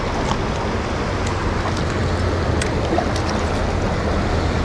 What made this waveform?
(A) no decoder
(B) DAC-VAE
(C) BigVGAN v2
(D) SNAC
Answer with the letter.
A